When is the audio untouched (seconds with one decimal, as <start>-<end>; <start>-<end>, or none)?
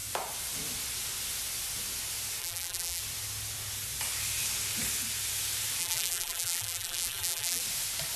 0.0-2.4; 3.0-5.8; 7.6-8.2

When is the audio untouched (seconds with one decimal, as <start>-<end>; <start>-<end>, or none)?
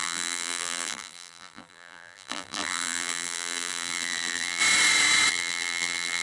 4.6-5.3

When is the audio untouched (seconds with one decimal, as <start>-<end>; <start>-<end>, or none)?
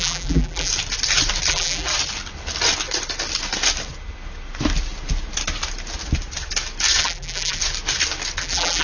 0.7-1.5; 1.9-7.0; 7.6-8.4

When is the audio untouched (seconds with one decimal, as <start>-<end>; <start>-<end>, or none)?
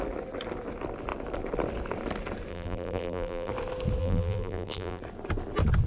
0.0-2.5; 3.5-4.0; 5.0-5.9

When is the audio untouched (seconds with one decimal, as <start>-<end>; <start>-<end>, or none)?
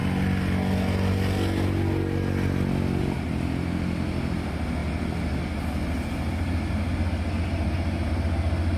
0.0-8.8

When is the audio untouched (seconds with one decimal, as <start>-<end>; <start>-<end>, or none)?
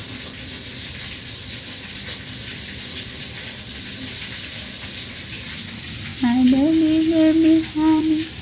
0.0-8.4